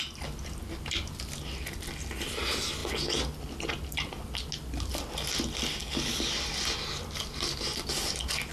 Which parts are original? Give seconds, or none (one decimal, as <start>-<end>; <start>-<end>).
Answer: 0.0-5.8; 6.3-8.5